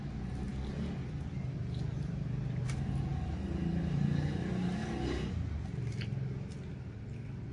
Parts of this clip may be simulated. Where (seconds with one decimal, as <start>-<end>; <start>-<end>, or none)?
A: none